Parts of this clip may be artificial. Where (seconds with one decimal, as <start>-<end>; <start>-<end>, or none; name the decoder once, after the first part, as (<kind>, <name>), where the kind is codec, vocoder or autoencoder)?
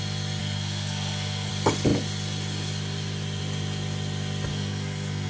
0.4-1.5 (codec, SNAC); 4.5-5.3